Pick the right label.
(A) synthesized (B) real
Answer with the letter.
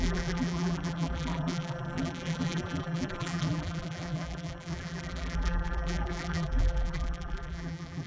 A